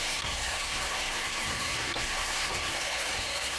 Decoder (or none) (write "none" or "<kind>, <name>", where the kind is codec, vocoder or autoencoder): codec, SNAC